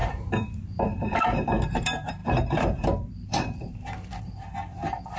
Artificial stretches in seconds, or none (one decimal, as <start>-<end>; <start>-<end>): 0.0-5.2